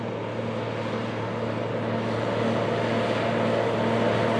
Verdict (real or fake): real